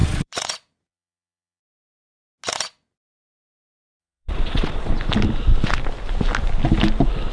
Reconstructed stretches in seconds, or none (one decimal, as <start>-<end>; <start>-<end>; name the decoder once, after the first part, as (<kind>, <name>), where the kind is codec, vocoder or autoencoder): 0.0-1.6 (vocoder, Vocos); 4.0-4.9